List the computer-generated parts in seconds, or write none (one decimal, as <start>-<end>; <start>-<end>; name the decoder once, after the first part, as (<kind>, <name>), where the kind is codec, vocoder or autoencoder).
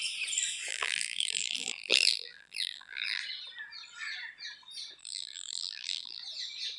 0.7-3.2 (vocoder, BigVGAN v2); 5.0-6.2